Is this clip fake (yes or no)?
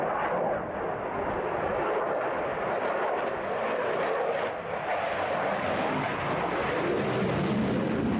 no